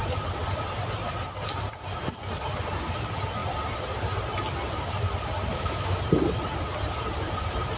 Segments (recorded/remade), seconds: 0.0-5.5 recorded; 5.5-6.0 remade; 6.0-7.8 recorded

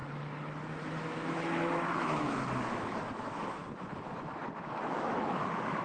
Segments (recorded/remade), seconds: 0.0-0.8 recorded; 0.8-3.6 remade; 3.6-4.6 recorded; 4.6-5.8 remade

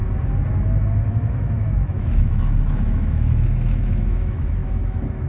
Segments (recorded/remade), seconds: 0.0-1.1 recorded; 1.1-5.3 remade

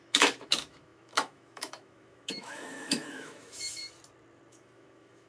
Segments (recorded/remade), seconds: 0.0-3.8 remade; 3.8-4.5 recorded; 4.5-5.3 remade

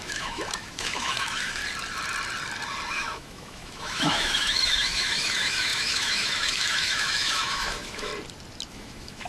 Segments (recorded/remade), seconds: 0.0-1.6 remade; 1.6-2.9 recorded; 2.9-8.1 remade; 8.1-8.7 recorded; 8.7-9.3 remade

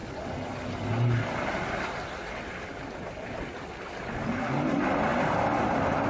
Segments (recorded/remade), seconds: 0.0-6.1 recorded

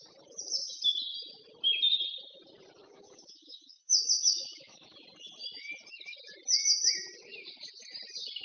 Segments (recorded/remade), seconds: 0.0-2.8 recorded; 2.8-5.0 remade; 5.0-8.4 recorded

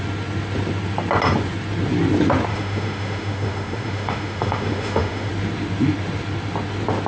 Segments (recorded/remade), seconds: 0.0-2.5 recorded; 2.5-5.3 remade; 5.3-7.1 recorded